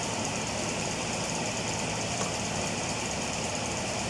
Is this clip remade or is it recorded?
remade